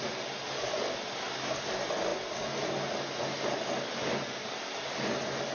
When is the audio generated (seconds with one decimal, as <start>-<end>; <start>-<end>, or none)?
none